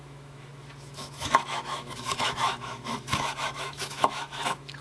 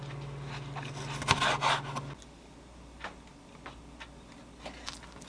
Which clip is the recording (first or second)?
second